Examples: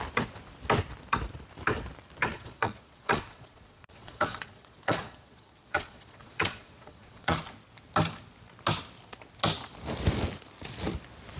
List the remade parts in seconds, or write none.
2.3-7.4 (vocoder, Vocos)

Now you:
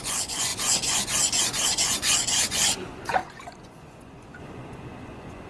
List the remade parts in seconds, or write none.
0.0-5.5 (vocoder, Vocos)

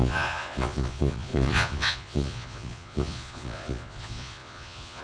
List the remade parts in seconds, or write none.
0.0-5.0 (vocoder, Vocos)

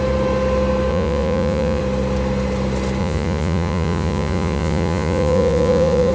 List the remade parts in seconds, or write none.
0.9-1.8 (vocoder, Vocos); 3.0-6.1

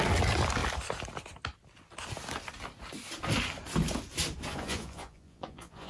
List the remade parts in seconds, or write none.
4.5-5.9 (vocoder, Vocos)

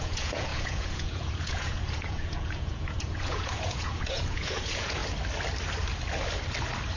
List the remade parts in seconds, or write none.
0.0-5.0 (vocoder, Vocos)

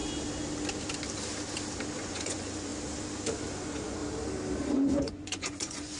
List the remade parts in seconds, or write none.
2.0-2.7 (vocoder, Vocos); 3.5-4.0; 4.7-6.0